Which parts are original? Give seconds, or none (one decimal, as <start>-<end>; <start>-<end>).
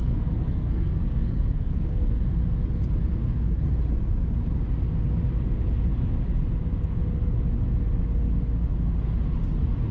2.2-3.1; 3.6-9.9